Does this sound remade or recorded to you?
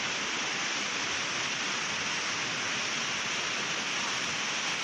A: recorded